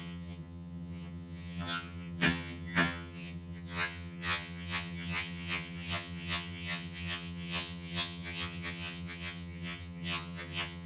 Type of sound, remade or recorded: remade